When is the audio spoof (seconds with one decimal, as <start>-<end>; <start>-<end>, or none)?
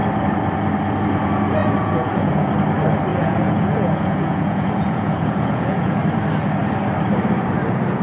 1.6-2.5; 3.1-6.0